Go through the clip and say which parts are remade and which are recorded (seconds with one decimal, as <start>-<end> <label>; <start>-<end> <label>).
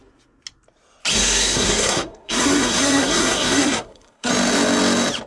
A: 0.0-1.1 recorded; 1.1-4.3 remade; 4.3-5.3 recorded